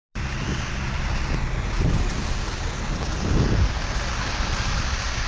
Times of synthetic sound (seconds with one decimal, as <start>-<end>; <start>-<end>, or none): none